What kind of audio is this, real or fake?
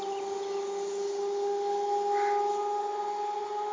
real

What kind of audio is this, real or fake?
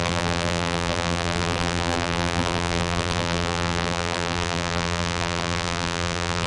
fake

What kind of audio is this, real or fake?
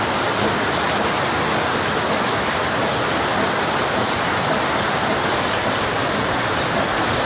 real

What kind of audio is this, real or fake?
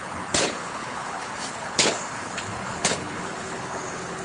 fake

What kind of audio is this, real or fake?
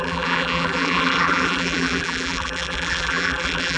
fake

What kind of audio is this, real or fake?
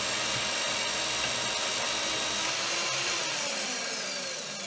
real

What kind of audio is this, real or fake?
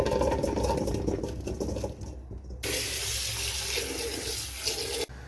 real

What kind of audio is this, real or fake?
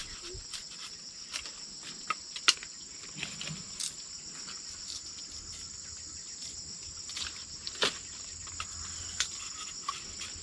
real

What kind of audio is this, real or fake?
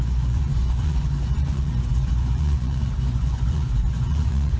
fake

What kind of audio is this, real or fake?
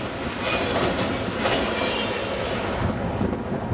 real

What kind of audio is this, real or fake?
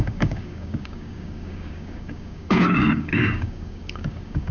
fake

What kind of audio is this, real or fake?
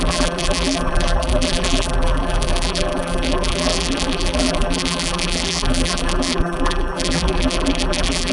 fake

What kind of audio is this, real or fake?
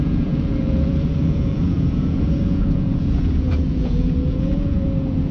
fake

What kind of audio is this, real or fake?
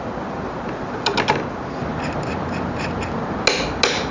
real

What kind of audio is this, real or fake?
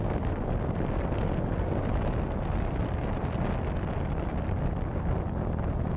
real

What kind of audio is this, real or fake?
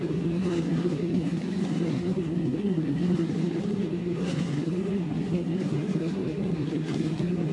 fake